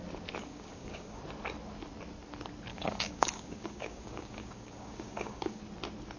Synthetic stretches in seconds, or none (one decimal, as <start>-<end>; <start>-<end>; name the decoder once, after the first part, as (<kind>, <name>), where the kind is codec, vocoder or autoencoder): 0.4-1.2 (codec, DAC); 2.7-5.6